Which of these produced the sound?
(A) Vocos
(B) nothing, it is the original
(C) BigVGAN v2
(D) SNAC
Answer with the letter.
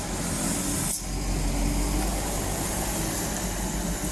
B